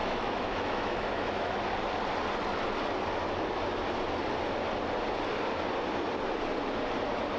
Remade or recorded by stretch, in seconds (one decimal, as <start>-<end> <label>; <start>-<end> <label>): 0.0-1.6 remade; 1.6-7.4 recorded